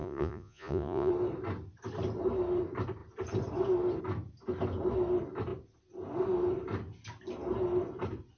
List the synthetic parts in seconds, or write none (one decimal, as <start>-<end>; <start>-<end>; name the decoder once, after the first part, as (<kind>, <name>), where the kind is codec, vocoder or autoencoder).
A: 0.0-1.1 (vocoder, Vocos)